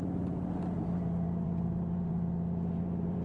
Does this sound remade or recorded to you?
remade